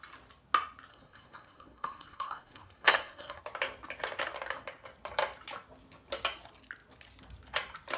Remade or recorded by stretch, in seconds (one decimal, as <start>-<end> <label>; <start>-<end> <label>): 0.0-0.9 recorded; 0.9-3.4 remade; 3.4-8.0 recorded